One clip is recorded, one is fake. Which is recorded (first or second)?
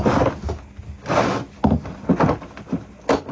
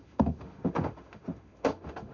first